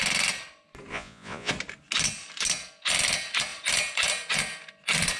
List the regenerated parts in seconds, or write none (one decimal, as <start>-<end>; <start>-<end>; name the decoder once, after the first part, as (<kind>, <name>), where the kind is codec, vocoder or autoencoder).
0.9-1.5 (vocoder, Vocos)